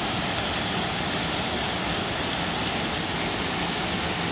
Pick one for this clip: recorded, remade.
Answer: recorded